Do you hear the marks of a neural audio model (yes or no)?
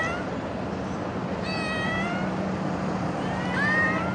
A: yes